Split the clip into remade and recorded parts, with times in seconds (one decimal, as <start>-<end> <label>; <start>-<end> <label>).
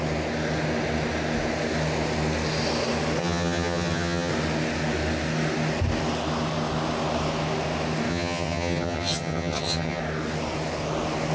0.0-3.2 recorded; 3.2-4.3 remade; 4.3-8.1 recorded; 8.1-10.0 remade; 10.0-11.3 recorded